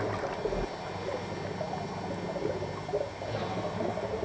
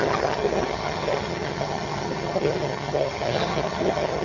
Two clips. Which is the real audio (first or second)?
first